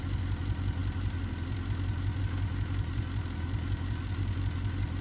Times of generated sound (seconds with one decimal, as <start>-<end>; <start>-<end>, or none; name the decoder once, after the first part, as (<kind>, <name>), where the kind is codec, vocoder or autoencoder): none